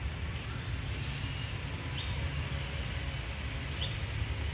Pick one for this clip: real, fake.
real